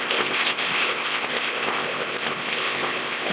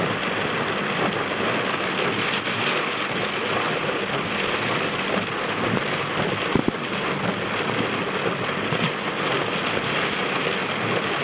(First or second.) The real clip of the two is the second